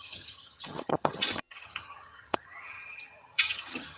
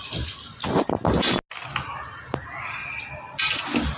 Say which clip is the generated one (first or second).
first